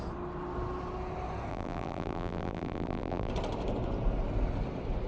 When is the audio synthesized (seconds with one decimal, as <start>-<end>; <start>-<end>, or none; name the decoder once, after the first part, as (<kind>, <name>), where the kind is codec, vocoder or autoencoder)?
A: 1.5-3.3 (vocoder, BigVGAN v2)